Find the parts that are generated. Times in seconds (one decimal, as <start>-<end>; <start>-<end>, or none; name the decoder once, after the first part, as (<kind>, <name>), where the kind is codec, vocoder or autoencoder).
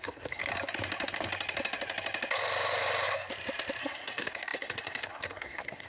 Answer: 0.0-0.4 (codec, SNAC); 3.8-5.9